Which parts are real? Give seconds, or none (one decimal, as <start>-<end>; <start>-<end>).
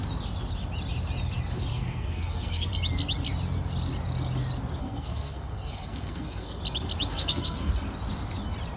0.0-1.7; 2.7-4.8; 6.6-7.1; 7.7-8.8